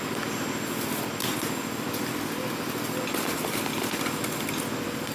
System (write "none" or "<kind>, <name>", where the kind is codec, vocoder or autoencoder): none